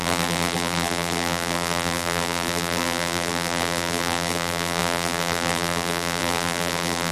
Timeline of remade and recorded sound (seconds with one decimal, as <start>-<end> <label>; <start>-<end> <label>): 0.0-7.1 remade